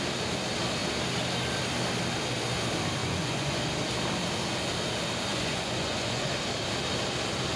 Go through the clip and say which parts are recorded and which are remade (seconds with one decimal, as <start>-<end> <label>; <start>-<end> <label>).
0.0-3.0 recorded; 3.0-3.6 remade; 3.6-5.3 recorded; 5.3-6.3 remade; 6.3-7.6 recorded